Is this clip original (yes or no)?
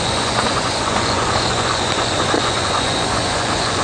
no